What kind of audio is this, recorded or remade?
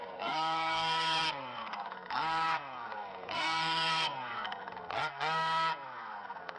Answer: remade